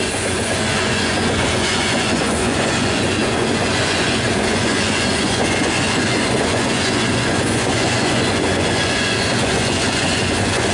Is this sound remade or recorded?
remade